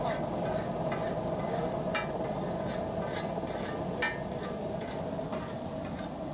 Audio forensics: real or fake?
real